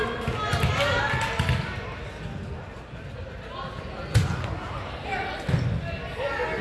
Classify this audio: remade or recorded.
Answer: recorded